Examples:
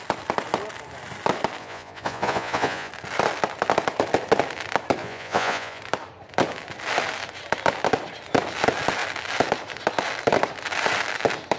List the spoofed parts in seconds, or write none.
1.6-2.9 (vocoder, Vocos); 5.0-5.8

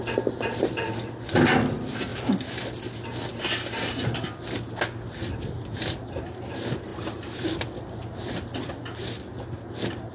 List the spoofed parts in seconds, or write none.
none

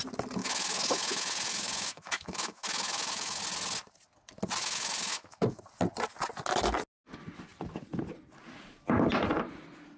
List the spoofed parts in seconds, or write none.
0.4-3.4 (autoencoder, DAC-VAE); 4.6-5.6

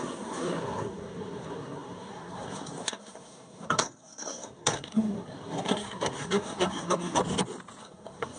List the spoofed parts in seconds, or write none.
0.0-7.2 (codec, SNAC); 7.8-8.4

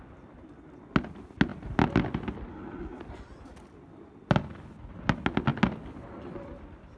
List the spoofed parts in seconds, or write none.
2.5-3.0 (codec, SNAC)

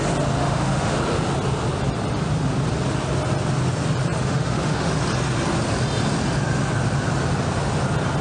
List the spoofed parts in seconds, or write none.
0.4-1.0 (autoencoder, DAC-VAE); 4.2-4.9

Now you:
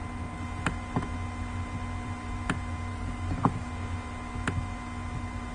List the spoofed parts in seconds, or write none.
2.9-3.7 (codec, DAC)

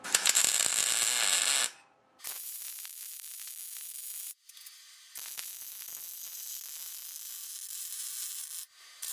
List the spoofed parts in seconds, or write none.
none